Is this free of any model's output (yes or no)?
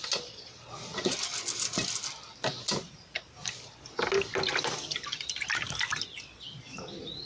yes